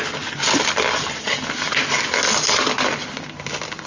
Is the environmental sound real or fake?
real